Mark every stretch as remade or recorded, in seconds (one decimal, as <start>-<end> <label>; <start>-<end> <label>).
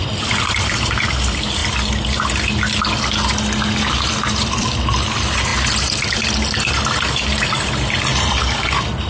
0.0-1.6 remade; 1.6-4.3 recorded; 4.3-5.5 remade; 5.5-6.6 recorded; 6.6-8.1 remade; 8.1-9.1 recorded